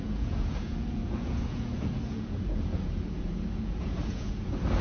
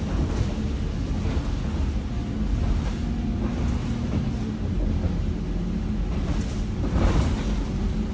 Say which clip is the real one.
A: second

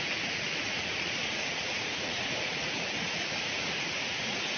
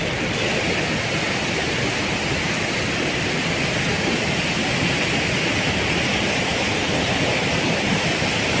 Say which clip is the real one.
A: second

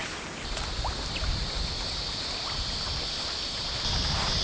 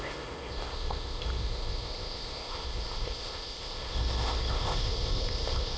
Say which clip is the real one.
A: first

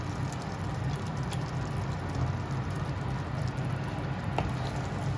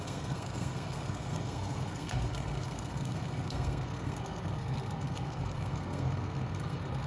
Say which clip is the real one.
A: first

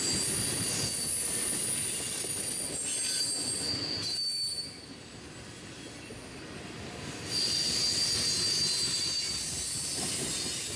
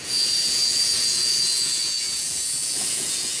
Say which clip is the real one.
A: first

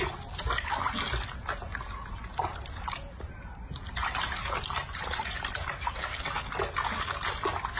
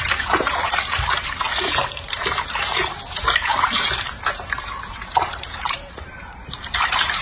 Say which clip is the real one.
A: first